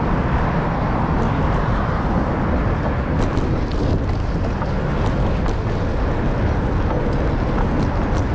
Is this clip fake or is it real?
real